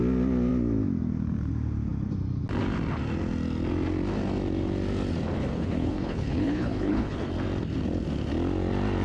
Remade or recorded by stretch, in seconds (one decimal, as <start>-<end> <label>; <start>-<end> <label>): 0.0-5.4 recorded; 5.4-7.3 remade; 7.3-9.0 recorded